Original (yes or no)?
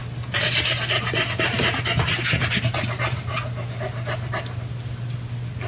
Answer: yes